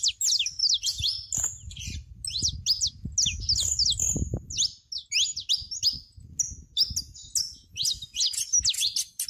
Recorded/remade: recorded